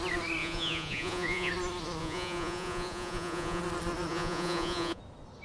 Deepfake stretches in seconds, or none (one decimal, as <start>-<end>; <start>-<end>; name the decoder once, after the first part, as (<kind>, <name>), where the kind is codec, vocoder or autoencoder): 0.4-1.5 (vocoder, Vocos); 2.0-3.6; 4.1-5.0